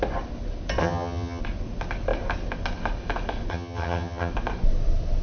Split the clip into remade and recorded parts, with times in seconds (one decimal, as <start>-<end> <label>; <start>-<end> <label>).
0.0-0.8 recorded; 0.8-1.4 remade; 1.4-3.5 recorded; 3.5-4.3 remade; 4.3-5.2 recorded